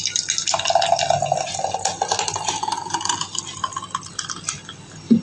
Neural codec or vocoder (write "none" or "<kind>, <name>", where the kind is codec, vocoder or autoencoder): none